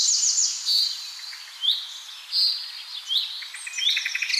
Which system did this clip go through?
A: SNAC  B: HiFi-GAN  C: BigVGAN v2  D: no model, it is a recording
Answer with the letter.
D